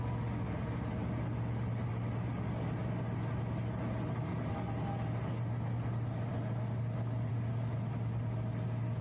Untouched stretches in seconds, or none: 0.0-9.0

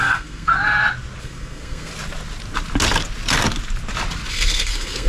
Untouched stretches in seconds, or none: 0.5-1.2; 1.9-4.3

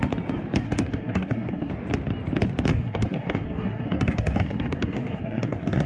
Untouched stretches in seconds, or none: 0.0-0.6; 1.7-2.7